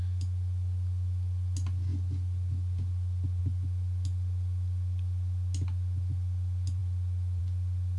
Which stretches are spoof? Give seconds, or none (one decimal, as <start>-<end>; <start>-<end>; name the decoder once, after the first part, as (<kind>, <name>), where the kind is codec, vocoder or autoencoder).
none